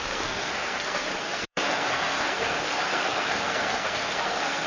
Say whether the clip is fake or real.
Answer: fake